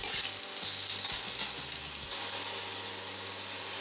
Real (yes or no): yes